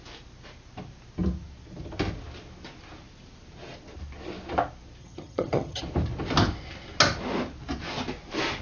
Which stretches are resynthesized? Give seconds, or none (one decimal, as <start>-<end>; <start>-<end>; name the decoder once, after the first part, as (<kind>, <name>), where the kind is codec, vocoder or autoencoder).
5.0-5.8 (vocoder, HiFi-GAN)